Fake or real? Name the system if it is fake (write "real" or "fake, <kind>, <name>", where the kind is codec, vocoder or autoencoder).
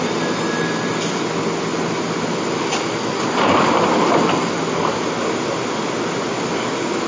real